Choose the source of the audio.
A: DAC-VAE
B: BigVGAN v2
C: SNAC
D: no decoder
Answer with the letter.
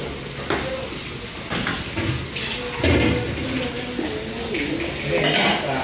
D